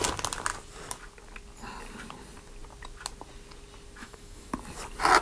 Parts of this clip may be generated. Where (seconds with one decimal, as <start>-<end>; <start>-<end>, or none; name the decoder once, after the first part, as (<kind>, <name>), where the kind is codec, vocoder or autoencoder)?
4.0-4.5 (autoencoder, DAC-VAE)